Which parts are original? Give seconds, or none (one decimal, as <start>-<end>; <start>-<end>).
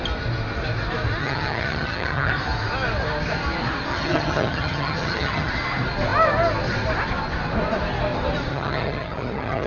0.0-1.2; 2.3-3.9; 5.5-8.5